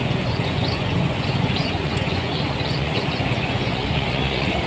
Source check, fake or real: fake